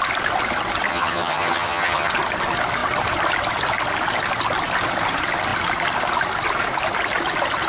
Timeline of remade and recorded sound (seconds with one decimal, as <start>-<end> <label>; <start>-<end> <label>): 0.0-0.9 recorded; 0.9-2.1 remade; 2.1-7.7 recorded